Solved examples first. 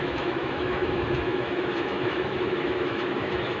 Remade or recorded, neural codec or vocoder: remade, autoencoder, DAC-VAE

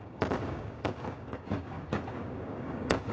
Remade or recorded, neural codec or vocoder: remade, codec, DAC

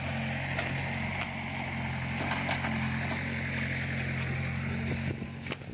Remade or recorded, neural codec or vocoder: recorded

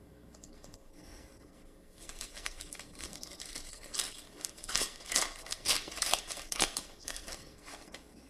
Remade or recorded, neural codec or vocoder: remade, codec, SNAC